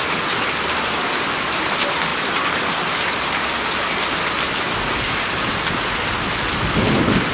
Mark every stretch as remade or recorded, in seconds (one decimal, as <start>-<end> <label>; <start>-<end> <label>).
0.0-7.3 recorded